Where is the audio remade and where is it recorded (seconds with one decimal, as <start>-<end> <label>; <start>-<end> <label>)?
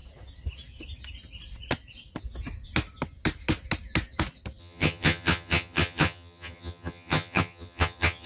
0.0-4.6 recorded; 4.6-8.3 remade